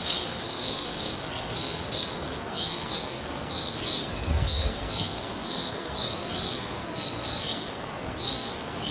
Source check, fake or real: fake